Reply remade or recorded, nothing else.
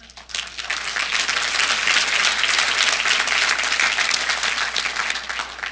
recorded